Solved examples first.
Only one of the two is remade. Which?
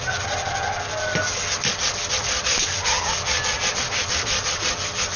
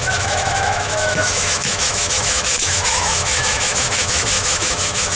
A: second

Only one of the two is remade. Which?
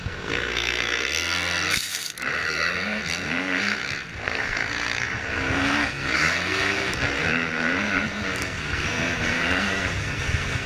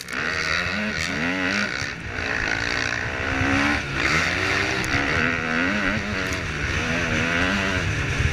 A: first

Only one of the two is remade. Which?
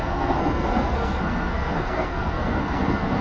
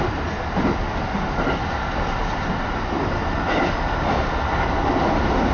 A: first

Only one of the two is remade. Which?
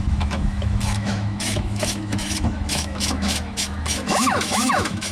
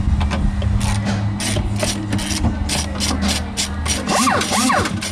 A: first